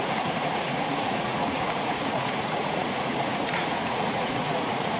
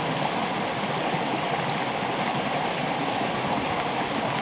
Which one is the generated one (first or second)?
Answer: first